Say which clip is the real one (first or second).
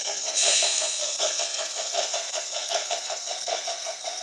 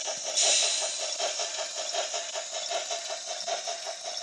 second